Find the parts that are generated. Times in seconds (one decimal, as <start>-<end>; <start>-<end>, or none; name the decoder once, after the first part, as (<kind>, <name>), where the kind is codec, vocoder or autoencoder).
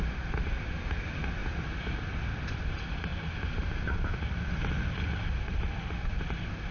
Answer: 1.4-2.5 (vocoder, BigVGAN v2)